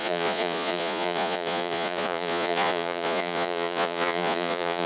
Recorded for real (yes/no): no